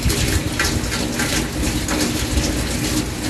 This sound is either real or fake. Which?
real